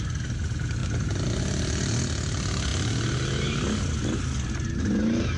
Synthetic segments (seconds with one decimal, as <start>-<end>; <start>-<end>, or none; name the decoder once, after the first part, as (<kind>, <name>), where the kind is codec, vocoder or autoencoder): none